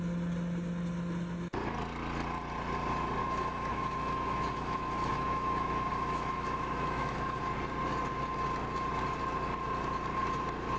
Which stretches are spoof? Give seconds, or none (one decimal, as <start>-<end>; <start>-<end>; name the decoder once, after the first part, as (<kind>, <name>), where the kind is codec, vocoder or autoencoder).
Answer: 3.2-7.4 (autoencoder, DAC-VAE)

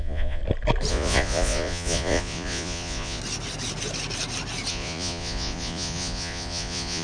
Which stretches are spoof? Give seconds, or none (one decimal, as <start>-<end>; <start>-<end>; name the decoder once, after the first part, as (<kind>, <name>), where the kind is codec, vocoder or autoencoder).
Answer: 0.0-0.4 (vocoder, Vocos); 0.9-3.2; 4.7-7.0

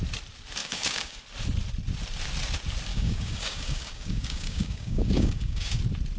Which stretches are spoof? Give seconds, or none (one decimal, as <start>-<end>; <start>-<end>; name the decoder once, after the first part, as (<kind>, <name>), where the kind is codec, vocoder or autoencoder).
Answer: 0.6-1.2 (codec, DAC); 2.9-5.8

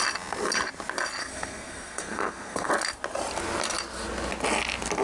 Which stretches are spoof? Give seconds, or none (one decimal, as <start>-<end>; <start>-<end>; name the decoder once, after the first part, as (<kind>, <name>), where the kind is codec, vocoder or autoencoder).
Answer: 1.2-2.7 (codec, SNAC)

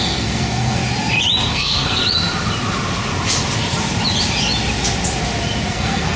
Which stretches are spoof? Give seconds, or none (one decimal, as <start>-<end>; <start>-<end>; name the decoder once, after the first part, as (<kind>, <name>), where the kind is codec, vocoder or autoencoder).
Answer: 0.0-0.8 (codec, SNAC); 1.5-2.0; 5.7-6.2

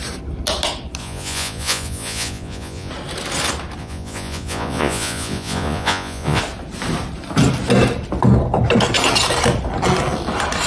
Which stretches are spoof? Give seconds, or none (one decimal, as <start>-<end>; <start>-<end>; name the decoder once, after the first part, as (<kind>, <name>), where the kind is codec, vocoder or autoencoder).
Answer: 1.0-2.9 (vocoder, Vocos); 3.8-6.4

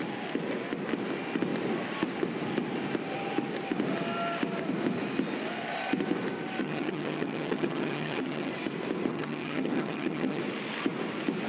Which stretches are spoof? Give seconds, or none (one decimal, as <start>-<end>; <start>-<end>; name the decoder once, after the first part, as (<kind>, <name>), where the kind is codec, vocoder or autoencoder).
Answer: 6.6-8.5 (vocoder, HiFi-GAN); 9.1-10.4